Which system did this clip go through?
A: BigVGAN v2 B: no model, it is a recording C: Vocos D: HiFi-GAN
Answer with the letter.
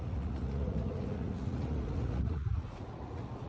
C